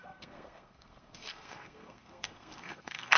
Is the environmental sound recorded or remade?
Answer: remade